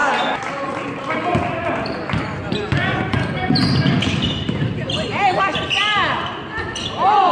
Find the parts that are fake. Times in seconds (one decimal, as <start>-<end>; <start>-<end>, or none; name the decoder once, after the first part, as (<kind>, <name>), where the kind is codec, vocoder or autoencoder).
none